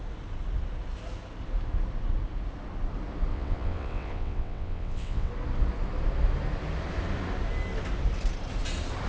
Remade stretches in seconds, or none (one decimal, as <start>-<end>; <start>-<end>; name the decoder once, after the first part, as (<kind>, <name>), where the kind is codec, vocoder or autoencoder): 3.3-5.3 (vocoder, WaveNeXt)